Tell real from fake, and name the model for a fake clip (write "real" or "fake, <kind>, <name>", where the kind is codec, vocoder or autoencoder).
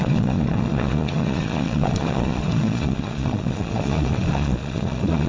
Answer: fake, vocoder, Vocos